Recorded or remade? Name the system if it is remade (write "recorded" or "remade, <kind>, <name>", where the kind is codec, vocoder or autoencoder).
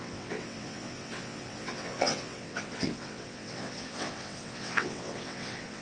remade, vocoder, WaveNeXt